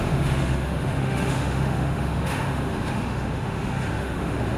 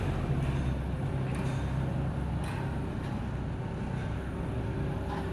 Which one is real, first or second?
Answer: second